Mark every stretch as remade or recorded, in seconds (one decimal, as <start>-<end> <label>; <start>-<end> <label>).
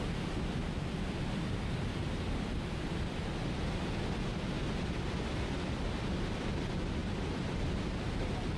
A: 0.0-8.6 recorded